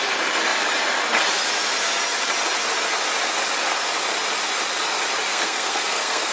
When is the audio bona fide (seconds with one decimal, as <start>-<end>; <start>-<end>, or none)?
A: 0.0-5.3